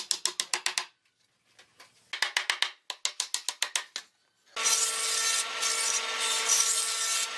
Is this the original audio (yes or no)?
yes